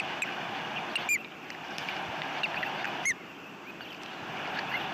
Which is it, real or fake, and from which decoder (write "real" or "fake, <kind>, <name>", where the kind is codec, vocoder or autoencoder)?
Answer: real